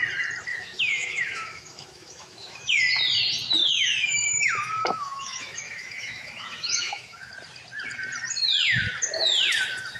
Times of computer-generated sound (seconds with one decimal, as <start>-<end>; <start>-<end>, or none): 0.5-2.8; 3.6-7.3